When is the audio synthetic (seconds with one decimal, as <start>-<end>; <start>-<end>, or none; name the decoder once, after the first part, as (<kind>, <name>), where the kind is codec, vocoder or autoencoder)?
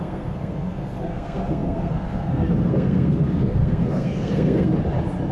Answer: 0.0-4.7 (codec, SNAC)